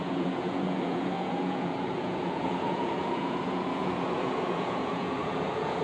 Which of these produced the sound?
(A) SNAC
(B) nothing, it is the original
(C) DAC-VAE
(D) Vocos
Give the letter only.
D